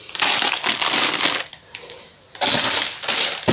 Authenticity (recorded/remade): recorded